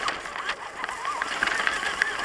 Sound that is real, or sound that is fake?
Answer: real